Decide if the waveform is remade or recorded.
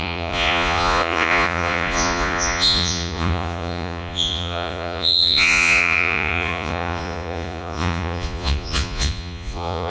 remade